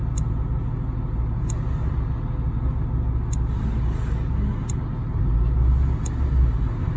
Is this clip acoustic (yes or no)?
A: yes